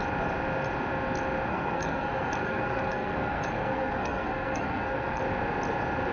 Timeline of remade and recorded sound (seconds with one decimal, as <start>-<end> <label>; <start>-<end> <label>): 0.0-1.5 recorded; 1.5-5.2 remade; 5.2-6.1 recorded